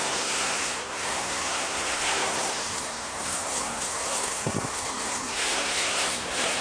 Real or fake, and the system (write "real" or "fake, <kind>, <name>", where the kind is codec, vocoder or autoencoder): fake, codec, SNAC